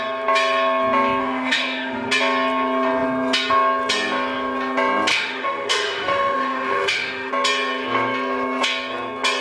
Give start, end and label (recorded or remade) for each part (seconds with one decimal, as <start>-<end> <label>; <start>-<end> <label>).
0.0-1.2 recorded; 1.2-2.1 remade; 2.1-5.1 recorded; 5.1-7.3 remade; 7.3-9.4 recorded